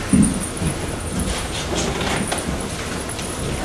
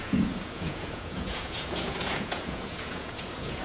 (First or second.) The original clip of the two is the first